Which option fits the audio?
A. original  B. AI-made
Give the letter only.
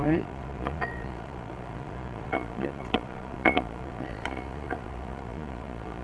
B